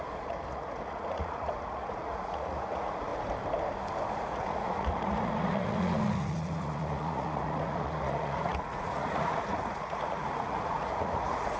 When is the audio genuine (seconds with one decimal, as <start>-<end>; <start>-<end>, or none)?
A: 3.1-4.1